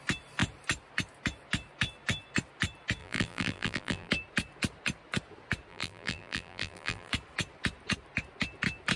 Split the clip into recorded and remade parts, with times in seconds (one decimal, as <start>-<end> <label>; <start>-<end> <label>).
0.0-3.0 recorded; 3.0-4.1 remade; 4.1-5.7 recorded; 5.7-7.1 remade; 7.1-9.0 recorded